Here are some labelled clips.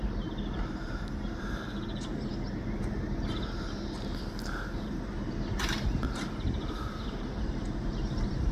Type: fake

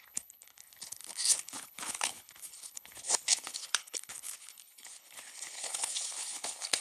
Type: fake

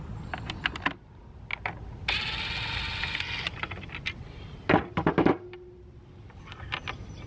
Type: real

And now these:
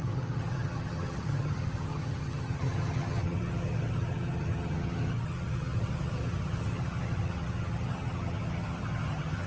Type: fake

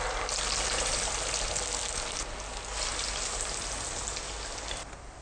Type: real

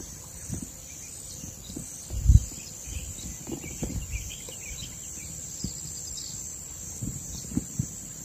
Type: fake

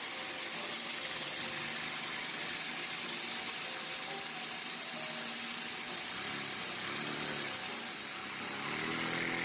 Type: real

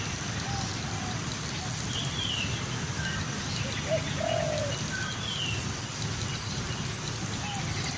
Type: real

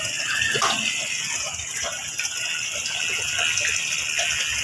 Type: real